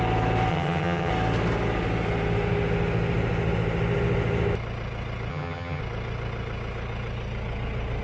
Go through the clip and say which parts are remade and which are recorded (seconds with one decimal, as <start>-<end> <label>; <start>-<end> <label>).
0.0-0.5 recorded; 0.5-1.1 remade; 1.1-5.3 recorded; 5.3-5.8 remade; 5.8-8.0 recorded